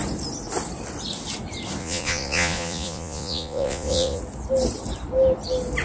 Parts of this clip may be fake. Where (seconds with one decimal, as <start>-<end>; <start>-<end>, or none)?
1.8-4.2